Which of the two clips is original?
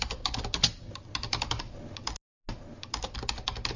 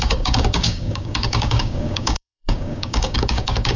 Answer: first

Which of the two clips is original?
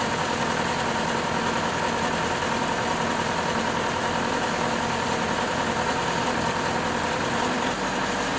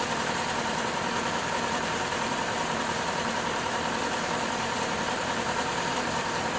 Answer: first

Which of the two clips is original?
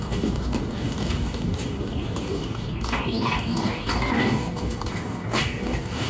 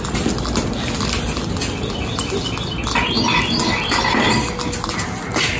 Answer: second